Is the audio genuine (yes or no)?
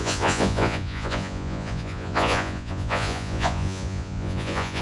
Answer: no